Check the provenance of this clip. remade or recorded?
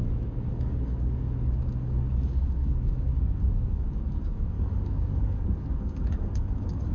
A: remade